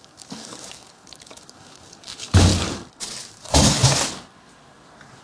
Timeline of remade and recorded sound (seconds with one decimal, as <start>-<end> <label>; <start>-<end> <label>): 0.0-2.5 remade; 2.5-3.2 recorded; 3.2-3.8 remade; 3.8-5.2 recorded